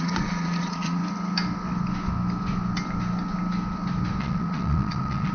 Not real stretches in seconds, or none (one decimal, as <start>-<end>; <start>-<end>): 0.0-1.0; 4.2-5.3